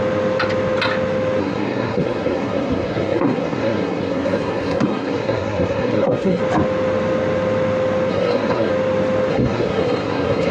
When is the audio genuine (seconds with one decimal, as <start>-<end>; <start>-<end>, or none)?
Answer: 0.0-1.4; 6.4-8.1; 8.7-9.3